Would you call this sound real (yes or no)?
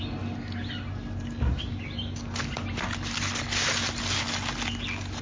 yes